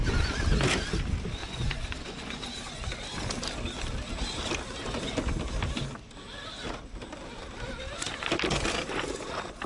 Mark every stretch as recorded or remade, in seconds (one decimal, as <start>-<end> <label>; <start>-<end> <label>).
0.0-1.4 recorded; 1.4-2.9 remade; 2.9-9.7 recorded